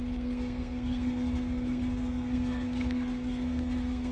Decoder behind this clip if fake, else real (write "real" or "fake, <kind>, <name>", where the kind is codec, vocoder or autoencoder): fake, codec, SNAC